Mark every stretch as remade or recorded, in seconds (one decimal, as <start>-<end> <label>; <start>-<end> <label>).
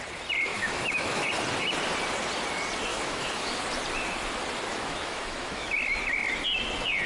0.0-0.5 recorded; 0.5-1.3 remade; 1.3-2.9 recorded; 2.9-3.6 remade; 3.6-4.7 recorded; 4.7-5.7 remade; 5.7-7.1 recorded